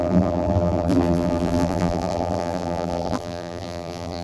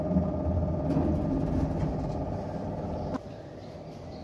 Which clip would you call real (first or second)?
second